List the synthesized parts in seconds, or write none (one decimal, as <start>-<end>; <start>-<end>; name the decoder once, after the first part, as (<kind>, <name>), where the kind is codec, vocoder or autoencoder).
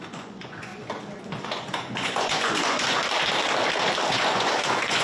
0.0-0.7 (vocoder, Vocos); 1.4-3.0; 4.1-5.0